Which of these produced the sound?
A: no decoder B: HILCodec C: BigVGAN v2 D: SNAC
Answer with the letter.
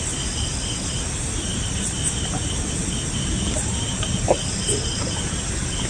A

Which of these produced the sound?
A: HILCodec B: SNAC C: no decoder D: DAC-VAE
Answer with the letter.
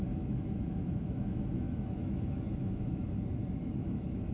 D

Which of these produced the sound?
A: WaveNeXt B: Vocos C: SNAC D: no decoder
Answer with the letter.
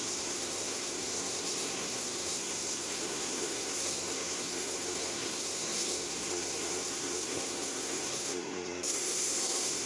C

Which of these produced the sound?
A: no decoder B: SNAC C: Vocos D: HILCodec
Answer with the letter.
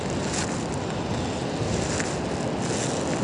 A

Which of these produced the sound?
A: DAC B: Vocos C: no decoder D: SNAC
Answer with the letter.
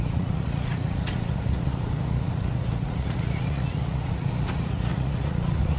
B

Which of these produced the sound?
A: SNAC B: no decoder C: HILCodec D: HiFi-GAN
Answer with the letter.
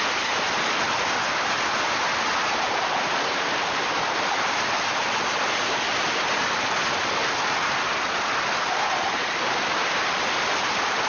B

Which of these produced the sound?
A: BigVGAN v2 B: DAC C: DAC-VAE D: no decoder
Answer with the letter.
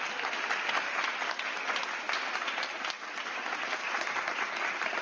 D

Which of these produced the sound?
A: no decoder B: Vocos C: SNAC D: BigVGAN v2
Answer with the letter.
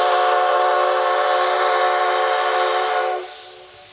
A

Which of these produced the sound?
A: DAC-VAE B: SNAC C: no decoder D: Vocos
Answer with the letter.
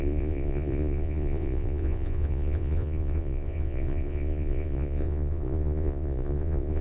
D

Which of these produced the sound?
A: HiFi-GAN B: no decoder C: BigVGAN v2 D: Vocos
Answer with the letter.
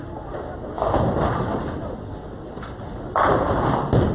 B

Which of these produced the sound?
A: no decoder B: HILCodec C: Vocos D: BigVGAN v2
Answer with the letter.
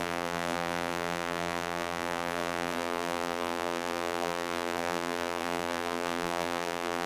D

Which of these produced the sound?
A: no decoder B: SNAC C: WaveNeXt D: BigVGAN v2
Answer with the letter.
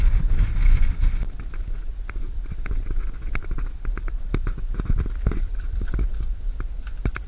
A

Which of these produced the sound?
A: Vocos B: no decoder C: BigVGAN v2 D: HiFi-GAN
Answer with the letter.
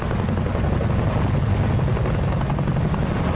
B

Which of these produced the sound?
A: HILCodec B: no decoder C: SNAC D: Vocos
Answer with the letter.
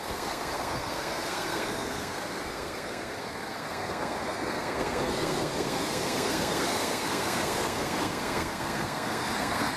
C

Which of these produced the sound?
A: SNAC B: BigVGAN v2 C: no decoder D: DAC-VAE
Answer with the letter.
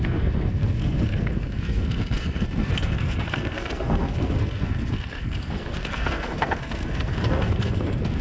A